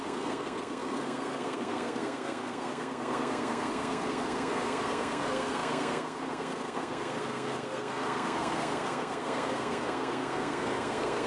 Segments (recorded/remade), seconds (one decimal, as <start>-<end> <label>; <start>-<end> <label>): 0.0-11.3 remade